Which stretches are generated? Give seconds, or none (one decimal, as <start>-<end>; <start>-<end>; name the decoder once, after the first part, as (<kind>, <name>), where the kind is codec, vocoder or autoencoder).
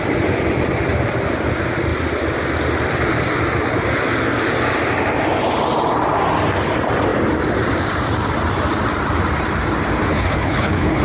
10.1-11.0 (codec, HILCodec)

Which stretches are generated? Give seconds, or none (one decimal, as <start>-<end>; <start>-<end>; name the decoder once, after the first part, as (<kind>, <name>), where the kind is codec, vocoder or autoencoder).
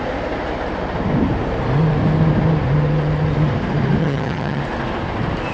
4.0-4.6 (vocoder, HiFi-GAN)